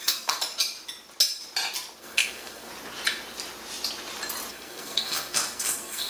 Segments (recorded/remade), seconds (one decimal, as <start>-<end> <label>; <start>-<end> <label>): 0.0-0.4 remade; 0.4-2.0 recorded; 2.0-2.7 remade; 2.7-4.5 recorded; 4.5-6.1 remade